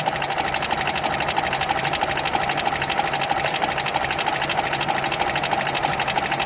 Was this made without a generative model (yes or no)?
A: yes